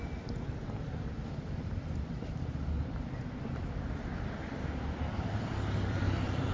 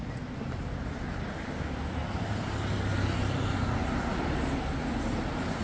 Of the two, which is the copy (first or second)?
first